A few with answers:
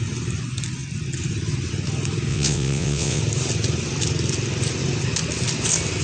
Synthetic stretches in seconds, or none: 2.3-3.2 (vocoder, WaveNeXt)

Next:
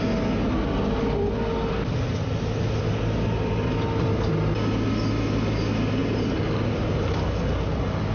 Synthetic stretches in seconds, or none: none

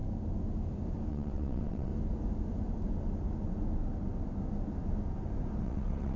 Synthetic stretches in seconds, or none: 1.1-1.9 (vocoder, WaveNeXt); 5.6-6.2

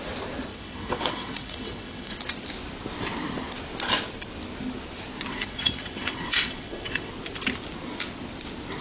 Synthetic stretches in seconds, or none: 0.5-2.2 (vocoder, WaveNeXt); 5.3-7.1

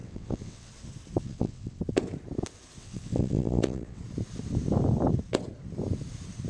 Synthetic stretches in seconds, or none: 0.0-0.7 (vocoder, WaveNeXt); 1.2-1.8; 2.8-4.0

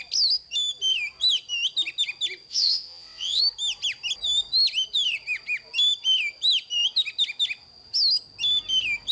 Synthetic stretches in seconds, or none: 2.5-3.4 (vocoder, WaveNeXt)

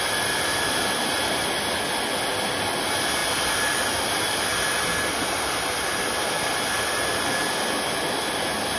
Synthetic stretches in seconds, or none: none

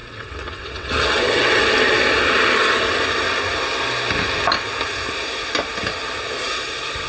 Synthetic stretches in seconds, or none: 0.0-1.6 (vocoder, WaveNeXt)